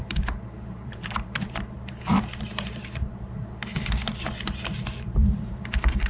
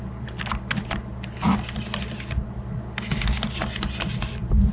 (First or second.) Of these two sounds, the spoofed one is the first